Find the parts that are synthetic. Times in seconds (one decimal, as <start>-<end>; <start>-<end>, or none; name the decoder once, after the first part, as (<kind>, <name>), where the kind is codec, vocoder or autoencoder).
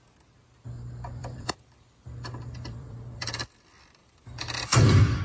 1.2-3.4 (vocoder, BigVGAN v2); 4.0-5.2